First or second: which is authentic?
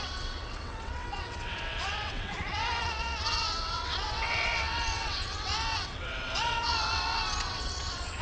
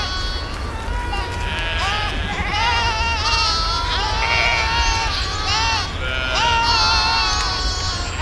second